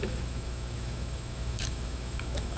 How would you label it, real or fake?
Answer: fake